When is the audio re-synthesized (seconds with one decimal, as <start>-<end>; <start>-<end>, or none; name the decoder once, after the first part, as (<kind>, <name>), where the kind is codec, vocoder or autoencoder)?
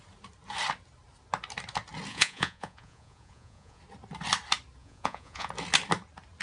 2.1-3.8 (vocoder, Vocos); 4.8-5.5